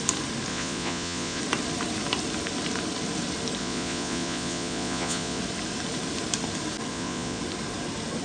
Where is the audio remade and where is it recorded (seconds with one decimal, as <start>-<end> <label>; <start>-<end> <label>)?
0.0-0.5 recorded; 0.5-1.4 remade; 1.4-3.6 recorded; 3.6-5.4 remade; 5.4-6.9 recorded; 6.9-7.4 remade; 7.4-8.2 recorded